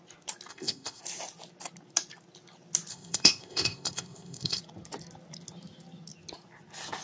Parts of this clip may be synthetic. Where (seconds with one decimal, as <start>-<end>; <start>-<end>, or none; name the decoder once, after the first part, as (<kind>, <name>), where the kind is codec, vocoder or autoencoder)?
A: 0.5-1.0 (codec, ZipCodec); 2.9-4.6